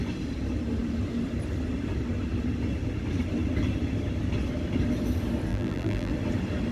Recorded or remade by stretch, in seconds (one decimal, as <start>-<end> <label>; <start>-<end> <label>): 0.0-5.5 recorded; 5.5-6.1 remade; 6.1-6.7 recorded